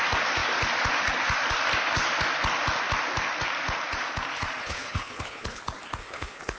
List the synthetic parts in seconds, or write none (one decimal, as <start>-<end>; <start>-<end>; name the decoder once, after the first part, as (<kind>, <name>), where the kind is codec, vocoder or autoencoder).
4.6-5.6 (codec, HILCodec); 6.0-6.6